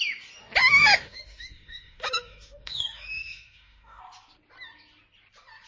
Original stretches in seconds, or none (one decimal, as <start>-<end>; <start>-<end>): 0.0-0.6; 4.0-5.7